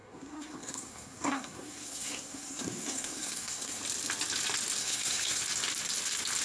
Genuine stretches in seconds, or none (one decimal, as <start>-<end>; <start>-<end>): 3.8-4.8; 5.4-6.4